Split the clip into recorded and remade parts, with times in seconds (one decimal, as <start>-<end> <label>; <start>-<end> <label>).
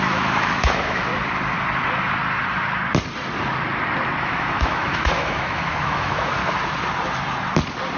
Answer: 0.0-1.1 remade; 1.1-4.2 recorded; 4.2-6.4 remade; 6.4-8.0 recorded